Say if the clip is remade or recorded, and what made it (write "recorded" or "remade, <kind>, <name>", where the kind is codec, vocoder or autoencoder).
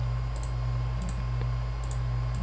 recorded